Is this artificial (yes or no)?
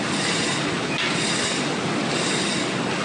no